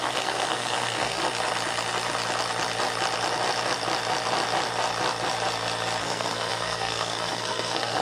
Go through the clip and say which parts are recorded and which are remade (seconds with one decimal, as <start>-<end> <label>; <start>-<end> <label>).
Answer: 0.0-1.2 remade; 1.2-6.0 recorded; 6.0-8.0 remade